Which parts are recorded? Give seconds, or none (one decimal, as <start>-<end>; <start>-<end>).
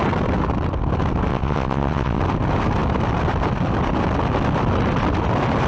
0.0-1.3; 2.2-5.7